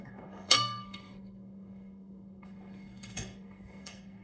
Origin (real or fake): fake